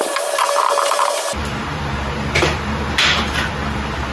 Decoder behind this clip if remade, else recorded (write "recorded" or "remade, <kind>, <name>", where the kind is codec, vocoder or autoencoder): remade, vocoder, BigVGAN v2